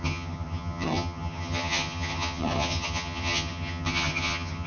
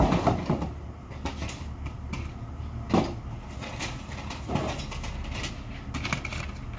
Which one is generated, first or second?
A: first